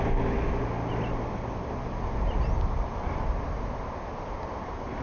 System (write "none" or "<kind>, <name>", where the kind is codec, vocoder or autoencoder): none